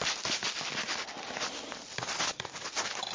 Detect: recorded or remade recorded